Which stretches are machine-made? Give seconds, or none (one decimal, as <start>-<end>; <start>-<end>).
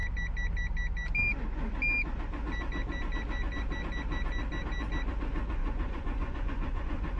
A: 5.6-7.2